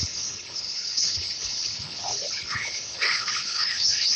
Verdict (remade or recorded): remade